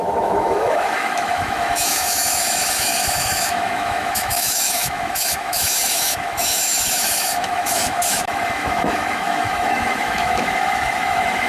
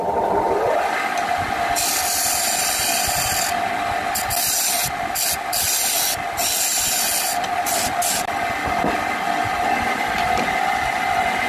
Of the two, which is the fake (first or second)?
first